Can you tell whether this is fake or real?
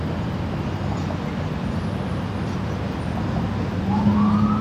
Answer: real